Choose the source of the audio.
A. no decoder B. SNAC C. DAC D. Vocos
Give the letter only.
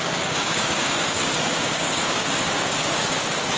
C